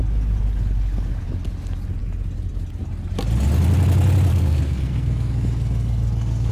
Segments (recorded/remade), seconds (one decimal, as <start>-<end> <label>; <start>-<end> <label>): 0.0-4.3 recorded; 4.3-6.5 remade